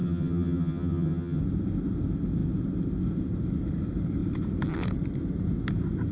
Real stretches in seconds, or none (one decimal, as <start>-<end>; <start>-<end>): 1.4-6.1